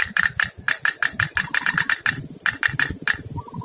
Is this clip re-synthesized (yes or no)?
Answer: no